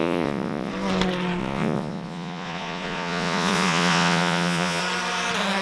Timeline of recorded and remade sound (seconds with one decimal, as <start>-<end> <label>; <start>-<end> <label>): 0.0-0.7 remade; 0.7-1.4 recorded; 1.4-4.8 remade; 4.8-5.6 recorded